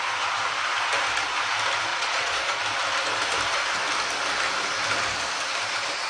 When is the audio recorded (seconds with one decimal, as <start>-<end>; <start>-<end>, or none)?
0.0-1.9; 2.6-6.1